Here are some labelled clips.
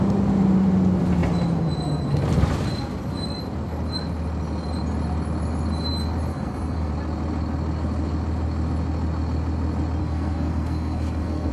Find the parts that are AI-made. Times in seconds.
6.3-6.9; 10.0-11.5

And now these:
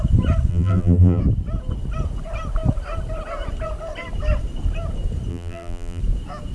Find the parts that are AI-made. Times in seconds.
0.5-1.2; 5.3-6.0